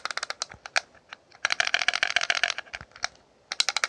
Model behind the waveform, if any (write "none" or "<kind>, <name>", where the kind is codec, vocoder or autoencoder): none